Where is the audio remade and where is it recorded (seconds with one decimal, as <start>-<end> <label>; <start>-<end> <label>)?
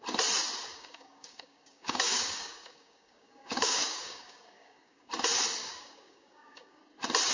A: 0.0-0.7 recorded; 0.7-5.1 remade; 5.1-5.6 recorded; 5.6-6.8 remade; 6.8-7.3 recorded